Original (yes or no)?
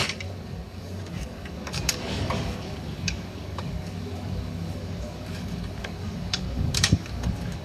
no